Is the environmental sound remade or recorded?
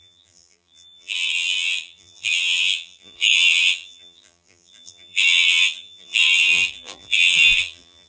remade